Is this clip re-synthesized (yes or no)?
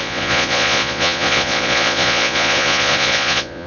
yes